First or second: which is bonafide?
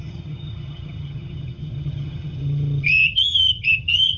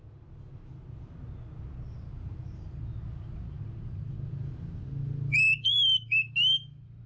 second